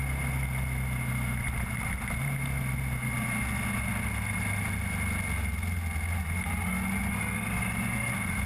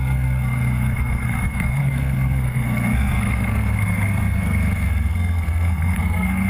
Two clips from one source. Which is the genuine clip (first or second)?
first